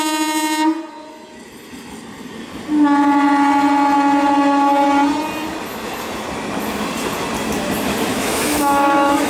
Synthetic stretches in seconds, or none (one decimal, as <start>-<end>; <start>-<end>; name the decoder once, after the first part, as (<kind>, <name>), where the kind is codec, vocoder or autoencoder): 8.1-9.3 (autoencoder, DAC-VAE)